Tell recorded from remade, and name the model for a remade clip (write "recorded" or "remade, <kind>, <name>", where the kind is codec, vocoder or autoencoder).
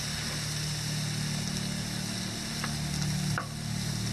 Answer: recorded